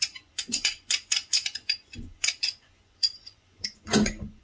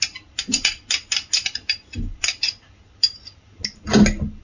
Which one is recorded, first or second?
second